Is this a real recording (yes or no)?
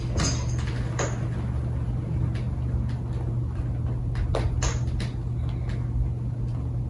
yes